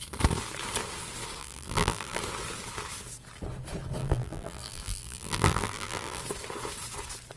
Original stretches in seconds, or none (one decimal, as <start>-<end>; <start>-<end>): 0.0-1.4; 2.2-4.0; 6.2-7.4

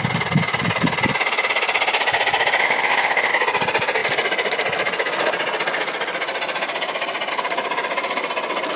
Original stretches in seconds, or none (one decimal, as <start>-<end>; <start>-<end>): 0.0-2.6; 3.3-8.8

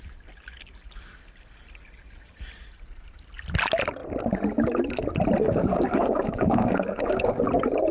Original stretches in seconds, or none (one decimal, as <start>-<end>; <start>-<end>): 0.0-5.4; 7.4-7.9

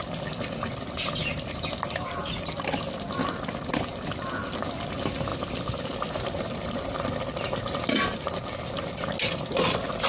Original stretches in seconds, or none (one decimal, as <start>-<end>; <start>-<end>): 0.0-10.1

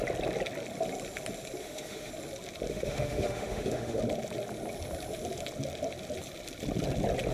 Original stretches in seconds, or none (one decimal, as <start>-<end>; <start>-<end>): 0.0-1.6; 2.1-2.7; 4.0-7.3

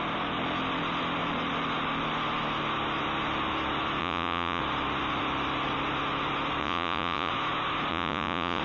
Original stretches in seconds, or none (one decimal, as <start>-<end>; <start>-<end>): 0.0-4.0; 4.6-6.6; 7.3-7.9

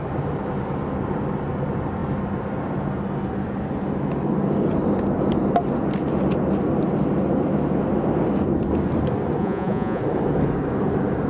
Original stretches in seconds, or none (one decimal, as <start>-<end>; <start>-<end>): 0.0-9.4; 10.0-11.3